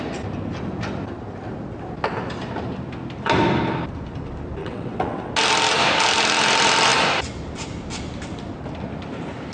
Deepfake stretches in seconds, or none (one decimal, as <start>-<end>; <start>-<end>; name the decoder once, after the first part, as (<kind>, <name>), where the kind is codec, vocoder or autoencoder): 4.6-5.3 (vocoder, WaveNeXt)